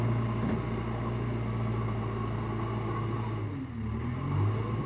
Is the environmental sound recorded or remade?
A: recorded